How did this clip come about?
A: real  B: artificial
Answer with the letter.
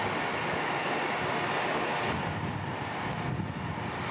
A